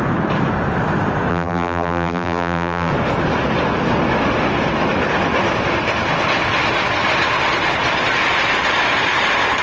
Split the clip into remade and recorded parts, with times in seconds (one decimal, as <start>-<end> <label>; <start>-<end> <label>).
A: 0.0-1.3 recorded; 1.3-2.9 remade; 2.9-9.6 recorded